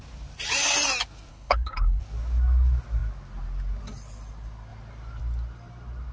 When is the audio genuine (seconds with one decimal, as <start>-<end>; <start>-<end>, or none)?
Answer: 0.0-1.3; 2.0-6.1